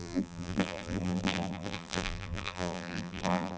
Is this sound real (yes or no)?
no